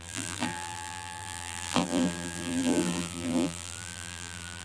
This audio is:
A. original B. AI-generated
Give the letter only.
B